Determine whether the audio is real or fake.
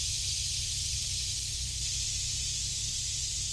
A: real